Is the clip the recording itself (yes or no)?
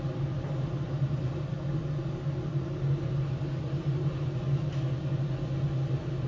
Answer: yes